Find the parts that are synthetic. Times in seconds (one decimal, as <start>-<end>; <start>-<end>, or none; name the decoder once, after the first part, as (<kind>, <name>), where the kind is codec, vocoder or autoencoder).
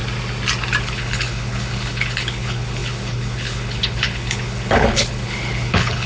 0.8-6.1 (codec, HILCodec)